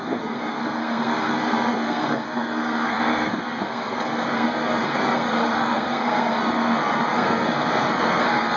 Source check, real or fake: fake